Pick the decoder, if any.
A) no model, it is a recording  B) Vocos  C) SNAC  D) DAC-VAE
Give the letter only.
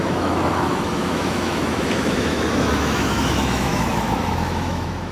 D